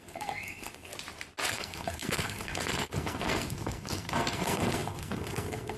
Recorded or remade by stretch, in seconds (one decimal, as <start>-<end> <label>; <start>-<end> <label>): 0.0-0.9 remade; 0.9-1.5 recorded; 1.5-5.8 remade